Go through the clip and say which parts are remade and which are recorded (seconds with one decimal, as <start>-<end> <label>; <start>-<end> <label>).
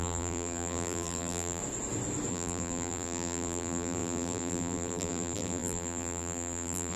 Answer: 0.0-1.6 remade; 1.6-2.3 recorded; 2.3-7.0 remade